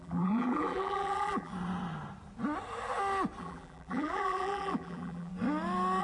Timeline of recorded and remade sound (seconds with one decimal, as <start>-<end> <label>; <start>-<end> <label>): 0.0-1.5 remade; 1.5-3.4 recorded; 3.4-5.3 remade; 5.3-6.0 recorded